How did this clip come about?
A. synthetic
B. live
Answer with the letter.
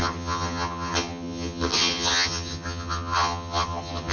A